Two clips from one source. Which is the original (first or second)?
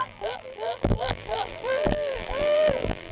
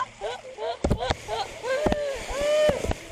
second